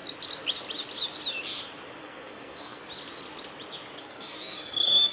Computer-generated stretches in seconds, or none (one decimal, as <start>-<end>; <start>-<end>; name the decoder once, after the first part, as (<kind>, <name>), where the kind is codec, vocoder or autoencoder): 2.0-2.8 (codec, SNAC); 4.0-5.1